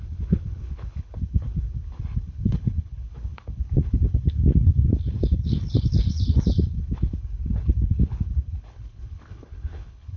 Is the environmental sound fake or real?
fake